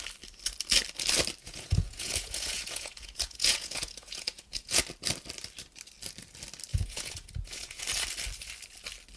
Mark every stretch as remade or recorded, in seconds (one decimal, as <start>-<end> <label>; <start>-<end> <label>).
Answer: 0.0-1.4 recorded; 1.4-4.8 remade; 4.8-6.7 recorded; 6.7-7.8 remade; 7.8-9.2 recorded